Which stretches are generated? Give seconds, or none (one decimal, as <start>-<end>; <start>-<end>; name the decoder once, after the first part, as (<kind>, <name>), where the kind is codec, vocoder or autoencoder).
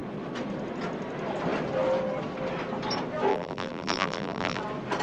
3.3-4.6 (vocoder, BigVGAN v2)